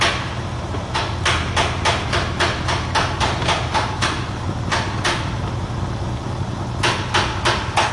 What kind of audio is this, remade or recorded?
recorded